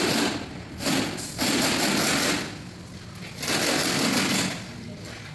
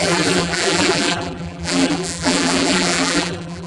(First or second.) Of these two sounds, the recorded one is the first